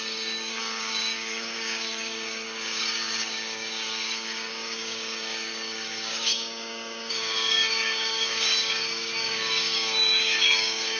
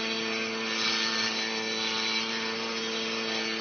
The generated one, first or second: first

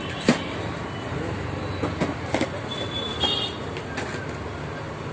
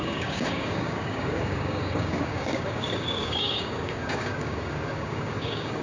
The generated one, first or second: second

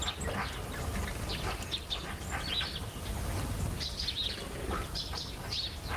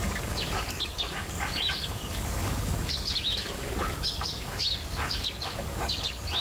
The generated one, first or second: second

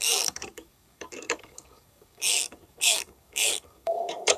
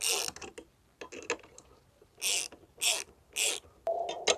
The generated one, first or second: first